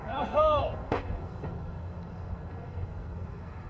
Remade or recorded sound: remade